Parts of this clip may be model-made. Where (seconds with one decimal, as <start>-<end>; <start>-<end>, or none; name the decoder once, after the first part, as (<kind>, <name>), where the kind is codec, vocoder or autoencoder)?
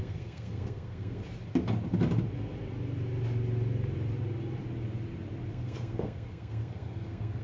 0.0-1.2 (codec, SNAC); 5.5-7.4